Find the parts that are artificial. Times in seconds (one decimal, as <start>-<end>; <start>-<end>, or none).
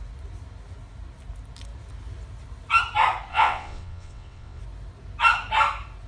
3.3-4.6